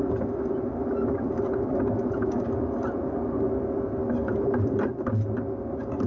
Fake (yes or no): no